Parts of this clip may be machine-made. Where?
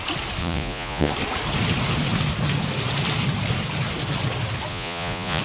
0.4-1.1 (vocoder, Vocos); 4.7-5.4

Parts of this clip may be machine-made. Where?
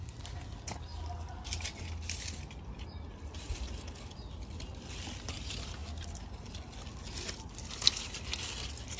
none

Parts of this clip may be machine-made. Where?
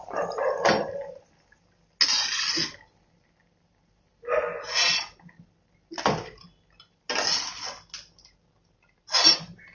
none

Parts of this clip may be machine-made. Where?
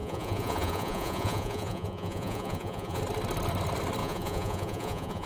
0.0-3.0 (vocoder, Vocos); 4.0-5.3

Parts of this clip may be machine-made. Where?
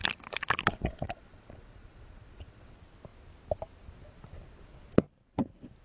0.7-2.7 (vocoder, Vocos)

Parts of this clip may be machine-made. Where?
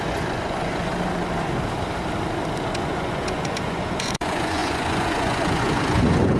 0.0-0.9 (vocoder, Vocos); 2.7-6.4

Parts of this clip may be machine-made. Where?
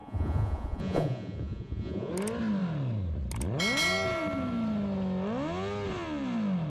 0.0-2.1 (vocoder, Vocos)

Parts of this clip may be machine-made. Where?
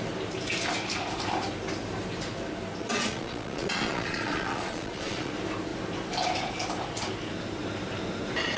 2.8-5.3 (vocoder, Vocos)